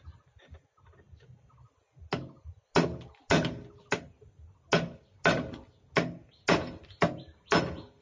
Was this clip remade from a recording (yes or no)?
no